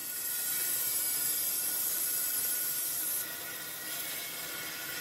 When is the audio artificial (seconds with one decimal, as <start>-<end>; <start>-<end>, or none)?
none